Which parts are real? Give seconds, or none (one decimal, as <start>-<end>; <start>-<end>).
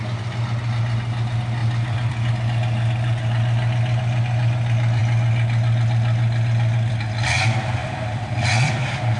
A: 0.0-1.6; 2.3-7.8